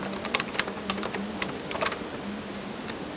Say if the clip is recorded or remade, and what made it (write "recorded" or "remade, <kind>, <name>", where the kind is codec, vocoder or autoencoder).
recorded